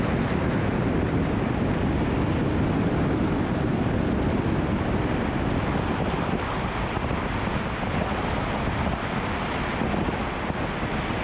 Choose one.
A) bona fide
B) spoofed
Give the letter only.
A